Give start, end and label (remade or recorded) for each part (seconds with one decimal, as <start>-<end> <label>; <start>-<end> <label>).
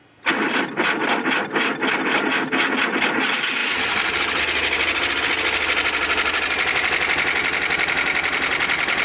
0.0-3.6 recorded; 3.6-4.4 remade; 4.4-9.0 recorded